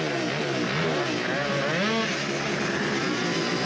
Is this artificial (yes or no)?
no